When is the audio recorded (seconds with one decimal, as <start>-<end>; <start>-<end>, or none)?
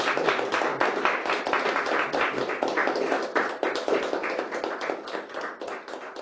0.0-0.7; 4.4-6.2